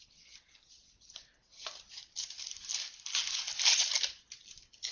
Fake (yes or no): no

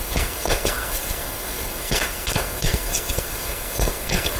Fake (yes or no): yes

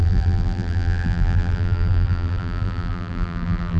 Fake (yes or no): yes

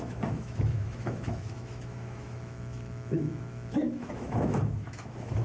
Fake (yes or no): yes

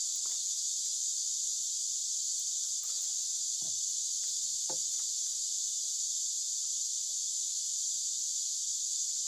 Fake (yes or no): no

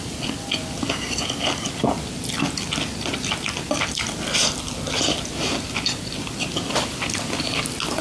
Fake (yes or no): no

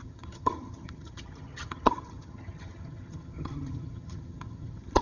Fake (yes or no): yes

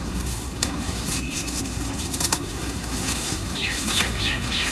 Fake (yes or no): yes